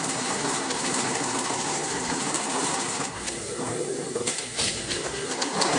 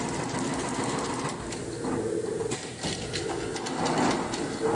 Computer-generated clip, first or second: first